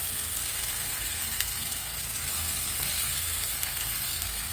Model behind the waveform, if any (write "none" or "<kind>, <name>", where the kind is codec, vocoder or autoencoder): codec, SNAC